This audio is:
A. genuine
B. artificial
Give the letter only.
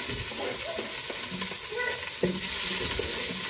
A